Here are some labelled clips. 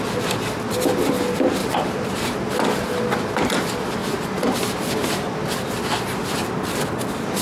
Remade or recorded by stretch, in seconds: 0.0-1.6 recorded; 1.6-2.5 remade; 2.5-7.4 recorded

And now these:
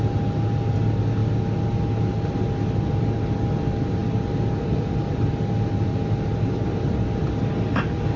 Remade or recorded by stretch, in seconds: 0.0-8.2 recorded

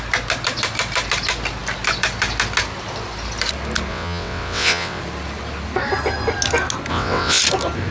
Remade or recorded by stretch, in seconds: 0.0-3.9 recorded; 3.9-5.0 remade; 5.0-6.9 recorded; 6.9-7.4 remade; 7.4-7.9 recorded

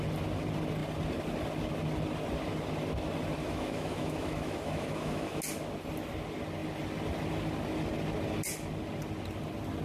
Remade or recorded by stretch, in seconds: 0.0-3.4 recorded; 3.4-5.4 remade; 5.4-9.8 recorded

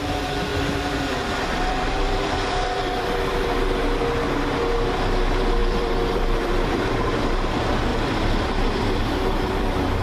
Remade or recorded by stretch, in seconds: 0.0-0.5 recorded; 0.5-3.8 remade; 3.8-5.6 recorded; 5.6-7.2 remade; 7.2-7.9 recorded; 7.9-10.0 remade

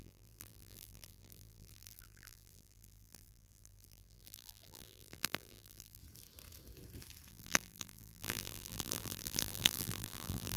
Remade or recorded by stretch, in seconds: 0.0-6.0 remade; 6.0-7.3 recorded; 7.3-10.6 remade

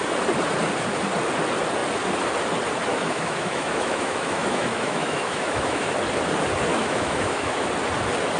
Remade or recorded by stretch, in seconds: 0.0-2.9 recorded; 2.9-5.9 remade; 5.9-6.7 recorded; 6.7-7.7 remade; 7.7-8.4 recorded